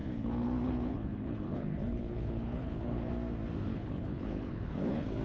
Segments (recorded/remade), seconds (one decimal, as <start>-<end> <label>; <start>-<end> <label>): 0.0-3.1 remade; 3.1-3.7 recorded; 3.7-5.2 remade